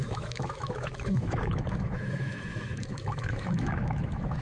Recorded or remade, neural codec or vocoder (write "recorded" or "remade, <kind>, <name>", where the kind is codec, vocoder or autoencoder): remade, autoencoder, DAC-VAE